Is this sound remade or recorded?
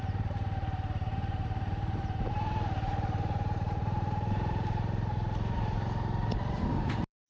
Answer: remade